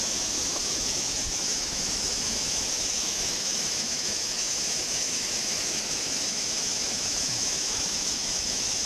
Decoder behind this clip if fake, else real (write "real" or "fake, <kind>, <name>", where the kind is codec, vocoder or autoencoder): fake, autoencoder, DAC-VAE